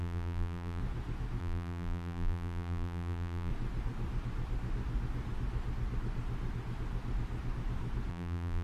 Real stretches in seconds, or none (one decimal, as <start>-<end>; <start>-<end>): 0.8-1.4; 3.5-8.1